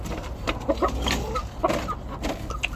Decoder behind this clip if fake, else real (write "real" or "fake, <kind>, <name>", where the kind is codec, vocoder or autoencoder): real